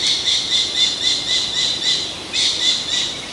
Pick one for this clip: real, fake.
real